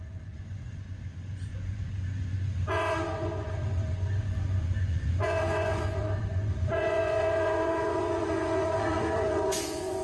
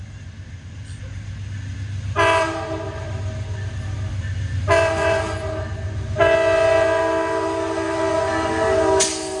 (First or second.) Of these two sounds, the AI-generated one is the first